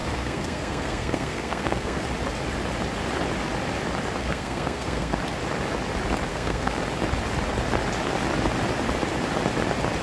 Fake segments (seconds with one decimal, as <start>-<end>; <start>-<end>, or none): 0.0-2.0; 4.2-5.2; 6.3-6.8